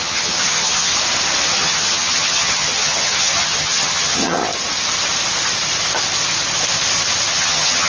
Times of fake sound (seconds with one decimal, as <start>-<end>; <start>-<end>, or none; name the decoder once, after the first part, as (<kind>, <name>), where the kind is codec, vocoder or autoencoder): 0.0-0.9 (vocoder, HiFi-GAN); 1.5-4.4; 7.3-7.9